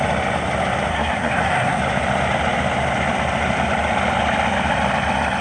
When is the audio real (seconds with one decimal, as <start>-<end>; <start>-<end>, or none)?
0.0-0.9; 1.8-5.4